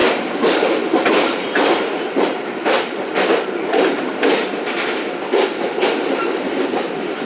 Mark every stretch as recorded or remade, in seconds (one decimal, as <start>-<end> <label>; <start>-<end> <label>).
0.0-4.1 remade; 4.1-6.5 recorded; 6.5-7.2 remade